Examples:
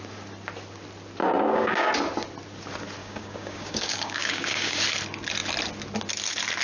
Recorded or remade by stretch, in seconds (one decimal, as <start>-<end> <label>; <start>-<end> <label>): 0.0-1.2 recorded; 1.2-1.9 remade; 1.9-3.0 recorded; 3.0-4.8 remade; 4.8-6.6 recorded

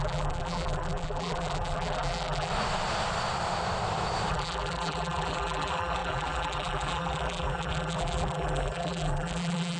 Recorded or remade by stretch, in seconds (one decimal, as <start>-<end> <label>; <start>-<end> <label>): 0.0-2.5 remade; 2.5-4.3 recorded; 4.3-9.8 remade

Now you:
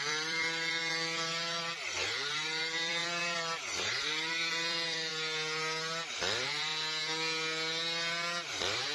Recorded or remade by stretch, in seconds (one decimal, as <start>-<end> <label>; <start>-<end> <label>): 0.0-5.1 remade; 5.1-6.1 recorded; 6.1-6.7 remade; 6.7-8.5 recorded; 8.5-8.9 remade

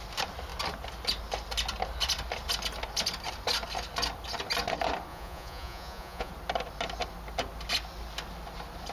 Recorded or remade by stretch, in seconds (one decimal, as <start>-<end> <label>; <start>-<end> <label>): 0.0-5.1 recorded; 5.1-6.3 remade; 6.3-8.9 recorded

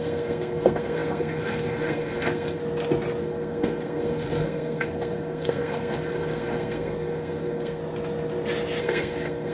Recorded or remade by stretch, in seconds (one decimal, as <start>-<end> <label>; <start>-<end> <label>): 0.0-2.6 remade; 2.6-3.2 recorded; 3.2-7.8 remade; 7.8-8.8 recorded; 8.8-9.5 remade